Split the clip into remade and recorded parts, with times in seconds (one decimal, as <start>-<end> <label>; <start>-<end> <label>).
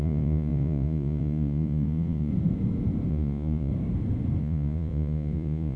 0.0-2.3 remade; 2.3-3.1 recorded; 3.1-3.7 remade; 3.7-4.4 recorded; 4.4-5.8 remade